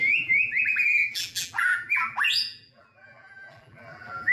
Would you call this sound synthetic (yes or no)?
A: yes